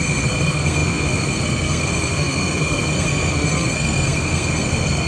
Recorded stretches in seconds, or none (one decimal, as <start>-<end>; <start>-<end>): none